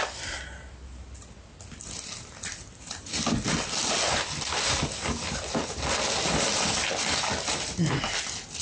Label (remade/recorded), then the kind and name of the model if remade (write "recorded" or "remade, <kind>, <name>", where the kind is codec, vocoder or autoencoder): recorded